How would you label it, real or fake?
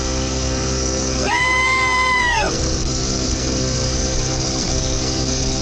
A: fake